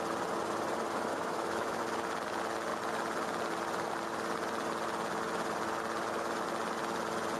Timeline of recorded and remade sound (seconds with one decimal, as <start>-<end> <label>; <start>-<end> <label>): 0.0-1.1 recorded; 1.1-1.8 remade; 1.8-7.4 recorded